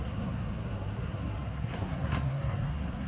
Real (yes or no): no